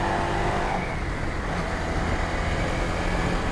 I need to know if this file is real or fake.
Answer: real